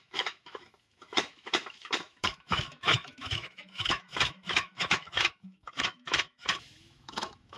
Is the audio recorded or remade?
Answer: remade